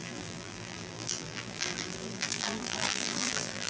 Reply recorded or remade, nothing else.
remade